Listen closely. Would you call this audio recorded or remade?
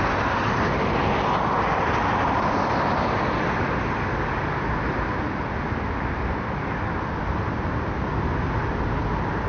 recorded